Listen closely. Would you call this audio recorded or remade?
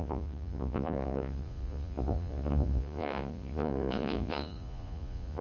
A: remade